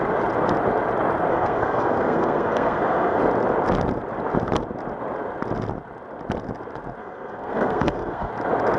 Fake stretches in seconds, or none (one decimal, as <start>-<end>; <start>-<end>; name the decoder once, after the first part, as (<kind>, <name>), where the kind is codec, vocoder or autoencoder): 1.3-3.2 (codec, SNAC); 7.0-8.3